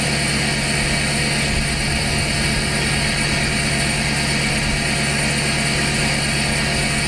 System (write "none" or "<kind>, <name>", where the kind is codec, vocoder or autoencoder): none